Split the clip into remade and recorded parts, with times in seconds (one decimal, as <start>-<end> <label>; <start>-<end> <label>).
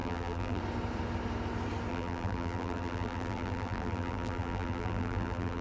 0.0-0.6 remade; 0.6-1.9 recorded; 1.9-5.6 remade